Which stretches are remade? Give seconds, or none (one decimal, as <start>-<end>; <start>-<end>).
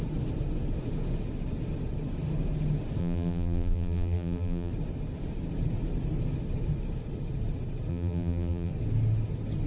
3.0-4.7; 7.9-8.7